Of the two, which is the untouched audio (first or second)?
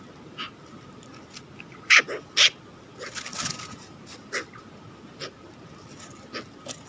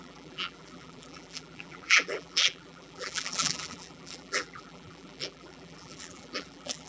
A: first